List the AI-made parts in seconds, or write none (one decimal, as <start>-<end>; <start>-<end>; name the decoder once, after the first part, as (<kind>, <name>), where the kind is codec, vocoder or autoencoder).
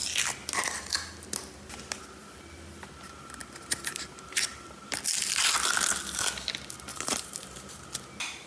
6.9-7.8 (vocoder, BigVGAN v2)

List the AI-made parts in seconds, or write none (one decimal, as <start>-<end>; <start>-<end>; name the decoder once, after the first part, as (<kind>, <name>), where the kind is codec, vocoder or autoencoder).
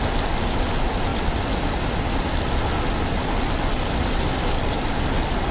none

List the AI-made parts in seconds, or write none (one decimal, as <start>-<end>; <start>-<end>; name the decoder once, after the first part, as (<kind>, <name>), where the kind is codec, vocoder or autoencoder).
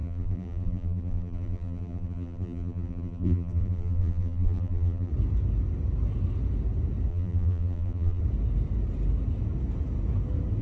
0.0-5.1 (vocoder, BigVGAN v2); 7.1-8.2